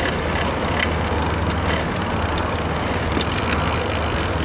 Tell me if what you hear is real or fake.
real